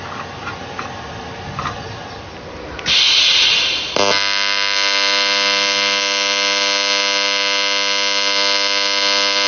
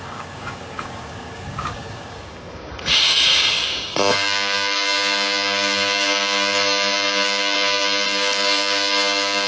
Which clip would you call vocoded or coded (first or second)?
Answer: second